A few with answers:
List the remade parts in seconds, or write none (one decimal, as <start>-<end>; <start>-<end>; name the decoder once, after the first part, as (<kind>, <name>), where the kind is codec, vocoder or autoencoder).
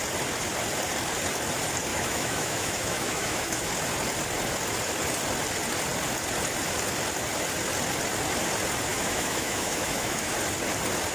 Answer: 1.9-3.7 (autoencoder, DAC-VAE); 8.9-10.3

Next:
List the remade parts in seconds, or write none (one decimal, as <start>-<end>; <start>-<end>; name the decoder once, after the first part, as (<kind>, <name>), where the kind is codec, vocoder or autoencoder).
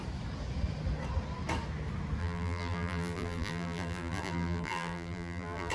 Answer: 2.2-5.7 (vocoder, BigVGAN v2)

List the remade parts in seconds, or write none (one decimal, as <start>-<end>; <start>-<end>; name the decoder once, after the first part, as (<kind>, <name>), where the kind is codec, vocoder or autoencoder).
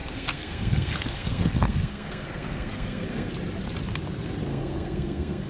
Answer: 0.0-3.3 (codec, SNAC); 4.5-5.5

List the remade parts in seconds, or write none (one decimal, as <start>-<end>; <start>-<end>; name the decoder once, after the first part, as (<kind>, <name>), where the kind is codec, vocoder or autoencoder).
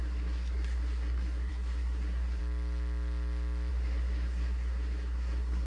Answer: 0.0-2.4 (codec, SNAC); 3.7-5.7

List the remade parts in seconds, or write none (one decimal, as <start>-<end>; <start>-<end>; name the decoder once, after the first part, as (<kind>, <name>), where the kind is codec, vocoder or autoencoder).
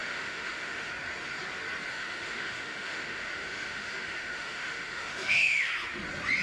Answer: 0.0-0.9 (autoencoder, DAC-VAE); 1.9-5.7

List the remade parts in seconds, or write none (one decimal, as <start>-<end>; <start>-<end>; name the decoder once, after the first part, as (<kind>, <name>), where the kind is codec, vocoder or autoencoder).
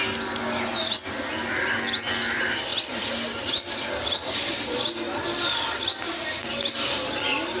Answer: none